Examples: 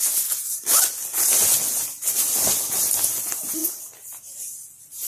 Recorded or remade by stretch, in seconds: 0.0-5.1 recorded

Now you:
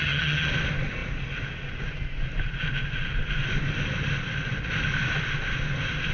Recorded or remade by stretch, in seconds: 0.0-0.5 remade; 0.5-6.1 recorded